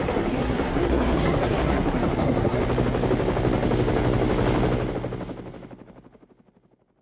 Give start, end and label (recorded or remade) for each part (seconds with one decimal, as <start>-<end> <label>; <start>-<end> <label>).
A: 0.0-2.6 remade; 2.6-7.0 recorded